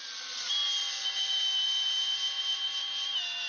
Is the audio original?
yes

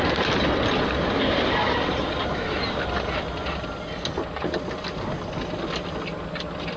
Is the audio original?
yes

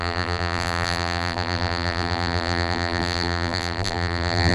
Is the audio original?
no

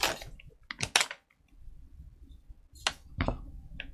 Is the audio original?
yes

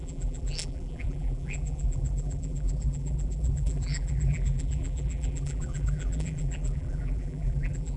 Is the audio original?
no